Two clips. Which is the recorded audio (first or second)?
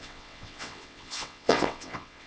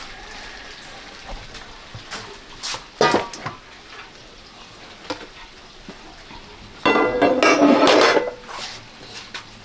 second